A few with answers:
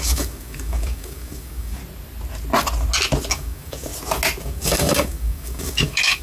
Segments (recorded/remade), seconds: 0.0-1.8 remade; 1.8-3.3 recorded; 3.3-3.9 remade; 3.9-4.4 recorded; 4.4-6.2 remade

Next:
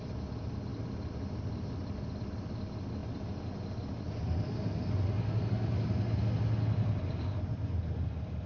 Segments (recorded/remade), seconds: 0.0-8.5 recorded

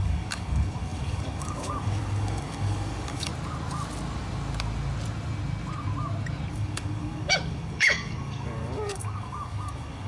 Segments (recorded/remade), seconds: 0.0-3.3 remade; 3.3-6.5 recorded; 6.5-10.1 remade